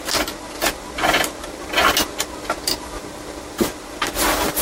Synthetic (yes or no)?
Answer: no